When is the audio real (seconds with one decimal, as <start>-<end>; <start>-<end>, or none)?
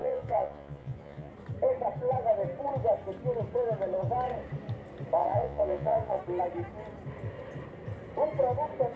1.3-5.2; 6.2-9.0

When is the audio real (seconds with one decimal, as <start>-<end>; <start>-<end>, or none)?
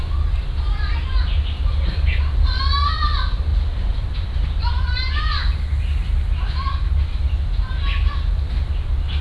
0.0-9.2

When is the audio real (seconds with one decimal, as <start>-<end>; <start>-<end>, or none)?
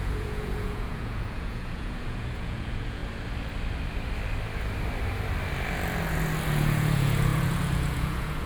3.0-6.5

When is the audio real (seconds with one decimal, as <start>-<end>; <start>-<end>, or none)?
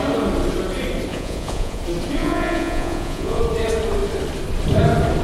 0.0-1.1; 1.8-2.2; 3.4-5.2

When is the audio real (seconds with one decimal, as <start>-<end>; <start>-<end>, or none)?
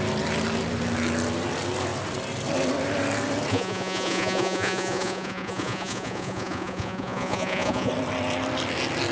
0.0-3.5; 7.9-9.1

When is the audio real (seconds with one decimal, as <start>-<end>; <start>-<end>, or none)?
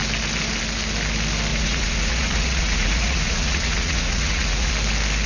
0.0-1.5; 4.7-5.3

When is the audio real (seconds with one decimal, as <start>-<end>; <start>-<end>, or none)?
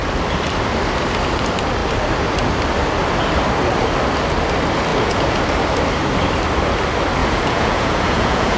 0.0-4.9; 5.4-7.2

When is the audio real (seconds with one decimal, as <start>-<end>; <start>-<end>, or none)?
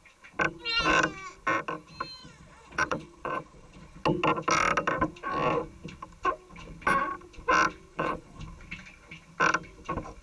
0.0-2.2; 4.0-7.9; 8.4-10.2